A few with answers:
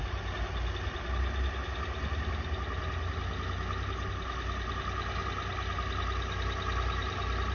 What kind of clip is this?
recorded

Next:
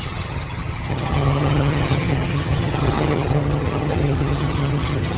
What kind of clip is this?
remade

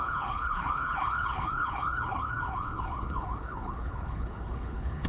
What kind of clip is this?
remade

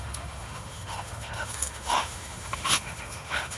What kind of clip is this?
remade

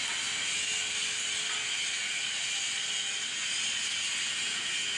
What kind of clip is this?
recorded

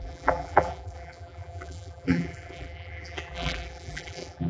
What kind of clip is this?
remade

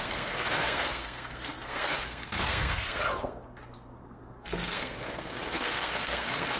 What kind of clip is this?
remade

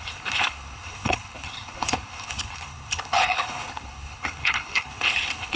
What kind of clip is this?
remade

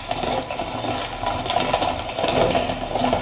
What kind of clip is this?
recorded